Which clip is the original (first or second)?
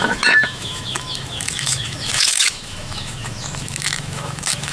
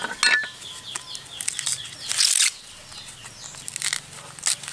second